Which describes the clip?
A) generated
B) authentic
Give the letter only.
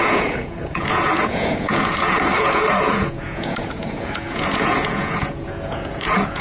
A